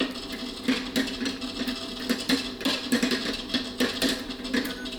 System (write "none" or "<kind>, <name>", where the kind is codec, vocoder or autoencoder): none